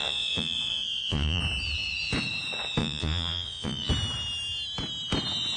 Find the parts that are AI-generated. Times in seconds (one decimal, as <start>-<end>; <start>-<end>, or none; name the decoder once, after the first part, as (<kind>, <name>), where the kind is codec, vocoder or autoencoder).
0.0-1.4 (vocoder, Vocos); 2.8-3.9